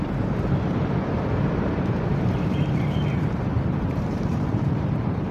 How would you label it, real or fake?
fake